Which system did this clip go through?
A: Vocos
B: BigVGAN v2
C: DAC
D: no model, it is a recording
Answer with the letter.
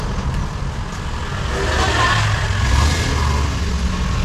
D